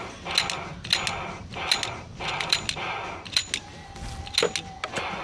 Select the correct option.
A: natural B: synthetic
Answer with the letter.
A